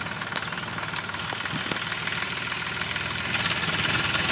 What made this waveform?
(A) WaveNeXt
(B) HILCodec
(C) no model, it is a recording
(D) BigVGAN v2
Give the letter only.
C